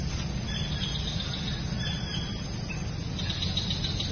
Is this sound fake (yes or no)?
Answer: no